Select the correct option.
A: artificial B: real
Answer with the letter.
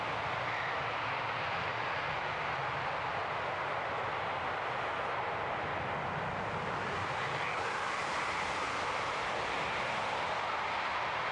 B